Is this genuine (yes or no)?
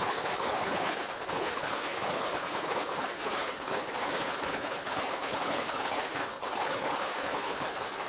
no